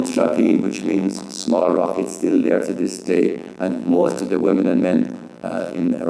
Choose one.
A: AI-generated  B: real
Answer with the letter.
A